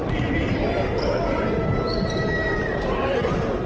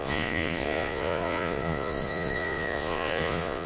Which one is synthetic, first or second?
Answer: second